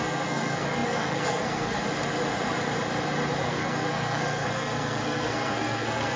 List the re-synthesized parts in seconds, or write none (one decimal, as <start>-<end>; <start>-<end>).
0.0-1.8; 3.4-6.2